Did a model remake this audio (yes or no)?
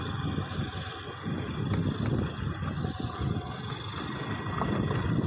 no